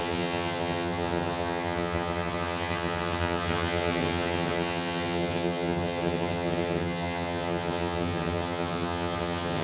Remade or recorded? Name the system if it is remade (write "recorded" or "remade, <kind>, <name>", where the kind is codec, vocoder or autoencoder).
remade, vocoder, HiFi-GAN